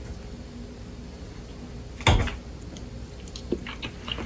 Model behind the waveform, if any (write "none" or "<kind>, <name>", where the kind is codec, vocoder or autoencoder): none